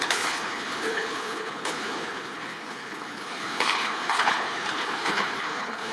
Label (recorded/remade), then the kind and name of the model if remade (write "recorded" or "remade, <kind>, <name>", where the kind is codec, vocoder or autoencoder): remade, codec, HILCodec